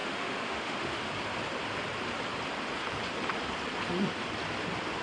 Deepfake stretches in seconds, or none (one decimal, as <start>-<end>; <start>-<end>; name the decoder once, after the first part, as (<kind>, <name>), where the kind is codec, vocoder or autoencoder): 0.0-1.1 (autoencoder, DAC-VAE)